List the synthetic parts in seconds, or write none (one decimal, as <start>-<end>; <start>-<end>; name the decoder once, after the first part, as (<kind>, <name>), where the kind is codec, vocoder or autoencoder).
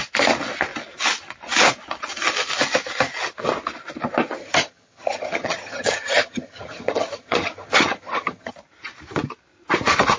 4.4-8.5 (vocoder, HiFi-GAN)